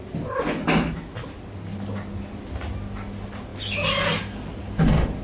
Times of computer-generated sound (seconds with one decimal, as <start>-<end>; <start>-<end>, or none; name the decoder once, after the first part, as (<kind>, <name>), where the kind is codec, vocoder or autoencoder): none